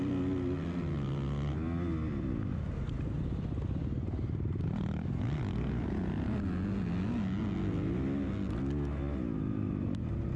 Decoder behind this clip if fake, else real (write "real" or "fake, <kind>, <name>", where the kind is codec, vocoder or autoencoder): real